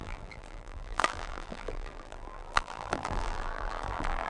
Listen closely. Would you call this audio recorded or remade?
remade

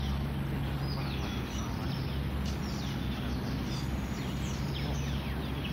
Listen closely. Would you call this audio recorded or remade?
recorded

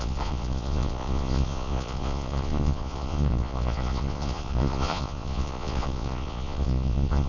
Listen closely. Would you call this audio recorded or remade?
remade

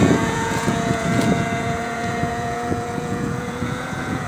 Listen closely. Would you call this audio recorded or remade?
remade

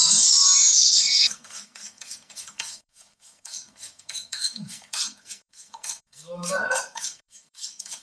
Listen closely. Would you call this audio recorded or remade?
remade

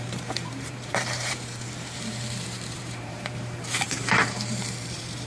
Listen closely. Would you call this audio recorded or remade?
remade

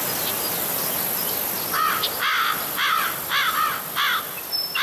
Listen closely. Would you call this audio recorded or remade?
recorded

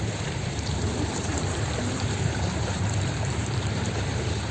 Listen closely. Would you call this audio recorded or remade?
remade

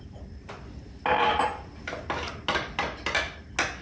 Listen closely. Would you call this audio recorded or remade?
recorded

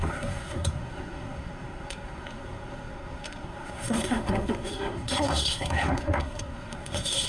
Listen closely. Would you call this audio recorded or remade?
remade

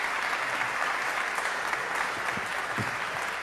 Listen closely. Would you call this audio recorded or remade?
recorded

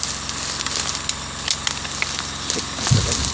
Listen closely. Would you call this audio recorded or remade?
recorded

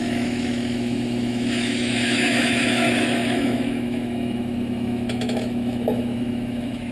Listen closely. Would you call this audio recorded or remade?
remade